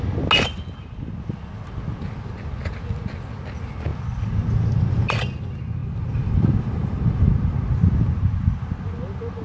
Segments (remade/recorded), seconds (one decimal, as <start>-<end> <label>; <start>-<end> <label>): 0.0-5.8 recorded; 5.8-7.3 remade; 7.3-9.4 recorded